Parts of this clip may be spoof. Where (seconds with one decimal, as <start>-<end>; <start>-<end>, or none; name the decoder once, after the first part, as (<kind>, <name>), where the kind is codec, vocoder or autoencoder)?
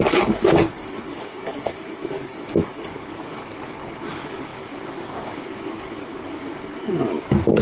0.0-7.6 (codec, DAC)